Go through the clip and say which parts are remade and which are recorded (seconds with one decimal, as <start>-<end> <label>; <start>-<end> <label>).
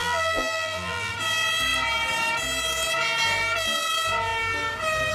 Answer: 0.0-1.1 remade; 1.1-5.1 recorded